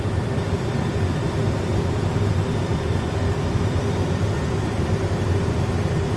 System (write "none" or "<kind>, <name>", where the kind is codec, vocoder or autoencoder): vocoder, BigVGAN v2